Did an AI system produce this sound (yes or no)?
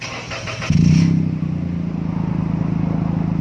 no